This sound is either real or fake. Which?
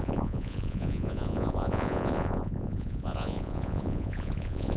fake